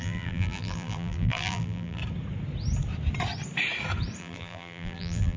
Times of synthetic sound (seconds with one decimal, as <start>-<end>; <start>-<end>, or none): 0.0-2.0; 4.2-5.4